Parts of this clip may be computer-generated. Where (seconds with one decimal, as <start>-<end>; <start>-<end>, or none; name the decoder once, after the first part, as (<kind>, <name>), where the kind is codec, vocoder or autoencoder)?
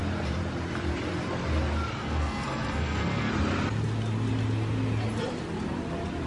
2.0-3.3 (codec, SNAC)